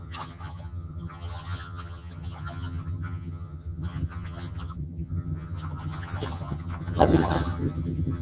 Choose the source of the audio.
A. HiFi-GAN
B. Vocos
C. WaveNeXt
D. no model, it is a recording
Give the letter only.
A